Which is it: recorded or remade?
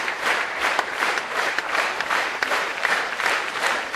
remade